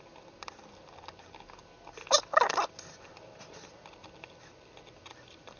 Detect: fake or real real